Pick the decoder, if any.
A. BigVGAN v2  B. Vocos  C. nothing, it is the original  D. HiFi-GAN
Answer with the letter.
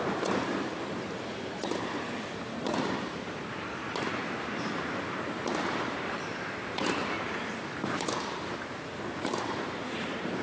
A